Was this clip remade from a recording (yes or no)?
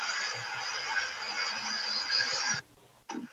no